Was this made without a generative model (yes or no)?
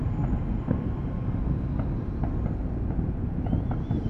yes